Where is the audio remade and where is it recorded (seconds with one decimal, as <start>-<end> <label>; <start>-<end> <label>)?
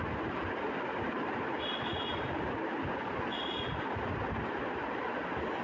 0.0-5.6 recorded